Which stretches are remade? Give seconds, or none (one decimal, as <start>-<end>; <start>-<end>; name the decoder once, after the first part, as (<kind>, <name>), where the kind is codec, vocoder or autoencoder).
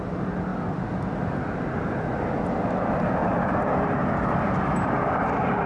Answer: 3.2-5.7 (vocoder, BigVGAN v2)